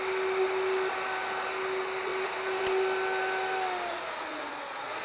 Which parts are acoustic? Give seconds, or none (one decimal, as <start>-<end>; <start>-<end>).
0.0-3.9